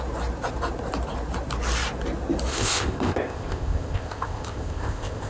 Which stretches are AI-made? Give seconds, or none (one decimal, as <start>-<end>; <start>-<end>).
2.5-5.3